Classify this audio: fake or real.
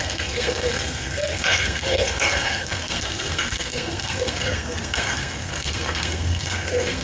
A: fake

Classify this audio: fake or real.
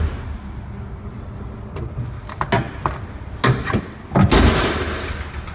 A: real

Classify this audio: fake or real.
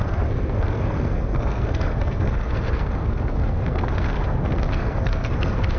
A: fake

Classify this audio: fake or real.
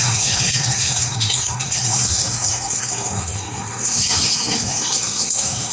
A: fake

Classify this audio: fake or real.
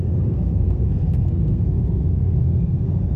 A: fake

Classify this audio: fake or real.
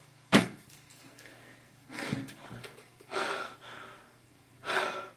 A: fake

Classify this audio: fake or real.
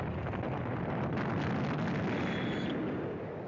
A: real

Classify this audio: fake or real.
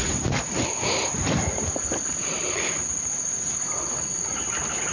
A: real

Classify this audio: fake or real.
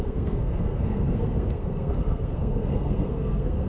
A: fake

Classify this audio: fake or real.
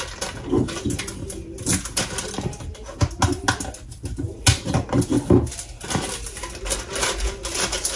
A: real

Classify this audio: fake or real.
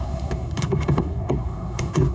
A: fake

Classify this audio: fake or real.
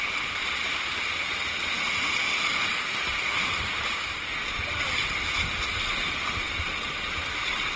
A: real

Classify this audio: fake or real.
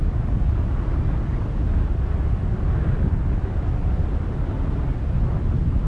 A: real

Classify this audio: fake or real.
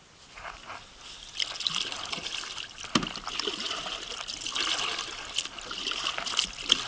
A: real